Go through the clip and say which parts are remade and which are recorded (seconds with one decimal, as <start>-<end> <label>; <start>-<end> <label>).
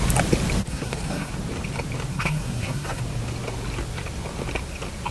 0.0-0.7 recorded; 0.7-1.3 remade; 1.3-2.1 recorded; 2.1-3.0 remade; 3.0-5.1 recorded